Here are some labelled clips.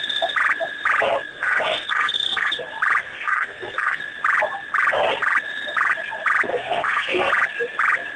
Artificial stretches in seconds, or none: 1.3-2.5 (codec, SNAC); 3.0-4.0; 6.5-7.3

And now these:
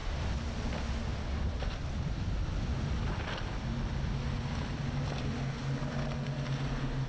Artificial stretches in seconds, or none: none